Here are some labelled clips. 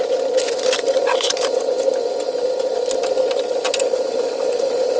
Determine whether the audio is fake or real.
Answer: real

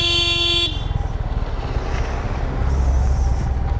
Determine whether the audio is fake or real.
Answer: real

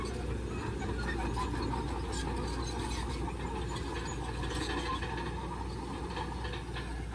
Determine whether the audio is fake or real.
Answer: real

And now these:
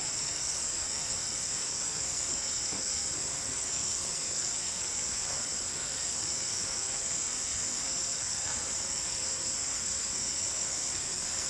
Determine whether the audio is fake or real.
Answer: fake